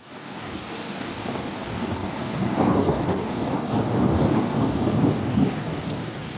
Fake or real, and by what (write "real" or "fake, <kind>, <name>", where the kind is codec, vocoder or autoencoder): fake, codec, DAC